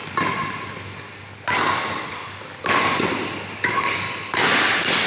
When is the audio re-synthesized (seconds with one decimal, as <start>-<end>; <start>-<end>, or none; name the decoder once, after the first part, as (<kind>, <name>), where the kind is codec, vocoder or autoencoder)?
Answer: 0.0-3.1 (vocoder, BigVGAN v2)